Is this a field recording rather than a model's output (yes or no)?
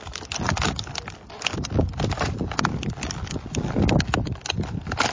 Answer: yes